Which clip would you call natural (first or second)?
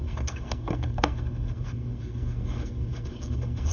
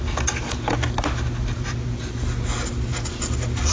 second